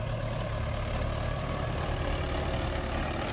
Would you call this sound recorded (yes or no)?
yes